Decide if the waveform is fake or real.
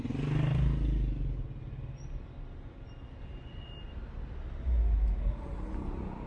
real